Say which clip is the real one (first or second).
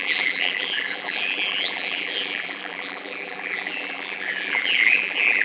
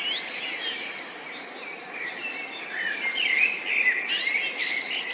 second